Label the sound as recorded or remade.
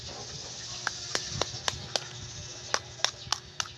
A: recorded